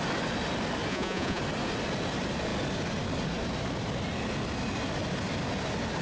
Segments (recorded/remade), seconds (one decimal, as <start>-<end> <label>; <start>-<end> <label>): 0.0-0.9 recorded; 0.9-1.4 remade; 1.4-6.0 recorded